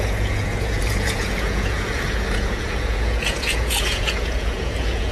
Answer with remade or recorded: remade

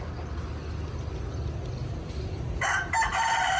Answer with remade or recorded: recorded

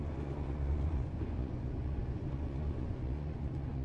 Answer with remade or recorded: remade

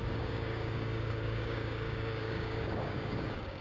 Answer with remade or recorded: remade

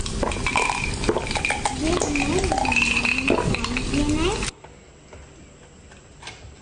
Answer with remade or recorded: recorded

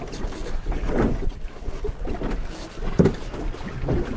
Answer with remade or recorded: remade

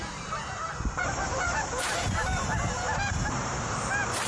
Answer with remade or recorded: remade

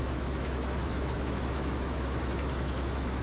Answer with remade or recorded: remade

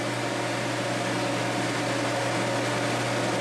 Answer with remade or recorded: recorded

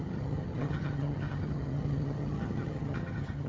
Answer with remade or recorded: remade